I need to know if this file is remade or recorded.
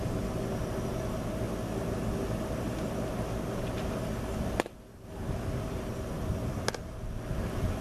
recorded